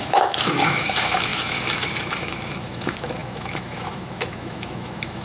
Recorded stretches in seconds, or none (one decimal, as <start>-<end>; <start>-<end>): none